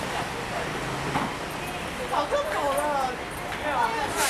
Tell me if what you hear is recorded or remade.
recorded